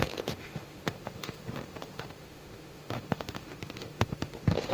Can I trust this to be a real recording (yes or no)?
no